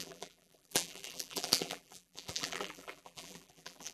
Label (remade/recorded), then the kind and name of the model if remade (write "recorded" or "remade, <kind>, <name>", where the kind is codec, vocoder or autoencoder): remade, vocoder, BigVGAN v2